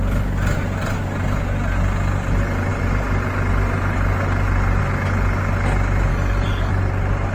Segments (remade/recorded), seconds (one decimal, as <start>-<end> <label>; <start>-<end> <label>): 0.0-6.1 recorded; 6.1-6.7 remade; 6.7-7.3 recorded